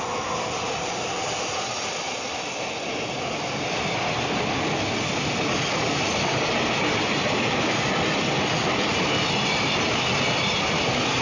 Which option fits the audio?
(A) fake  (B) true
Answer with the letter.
B